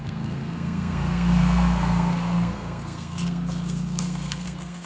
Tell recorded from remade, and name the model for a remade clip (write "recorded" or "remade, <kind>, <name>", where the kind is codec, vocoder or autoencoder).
remade, codec, SNAC